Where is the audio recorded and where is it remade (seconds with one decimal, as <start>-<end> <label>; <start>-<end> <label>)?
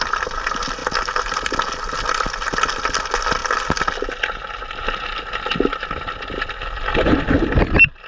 0.0-8.1 recorded